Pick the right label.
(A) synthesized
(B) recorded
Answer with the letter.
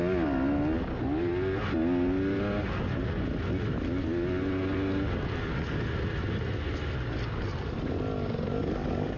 B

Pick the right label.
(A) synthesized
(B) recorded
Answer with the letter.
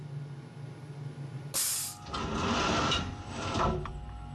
B